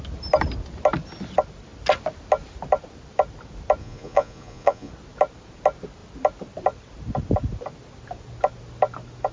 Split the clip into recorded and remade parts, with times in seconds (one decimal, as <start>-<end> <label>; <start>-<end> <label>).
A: 0.0-3.8 recorded; 3.8-4.9 remade; 4.9-9.3 recorded